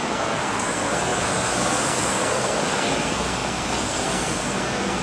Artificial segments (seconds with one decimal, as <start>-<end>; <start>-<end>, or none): 0.0-5.0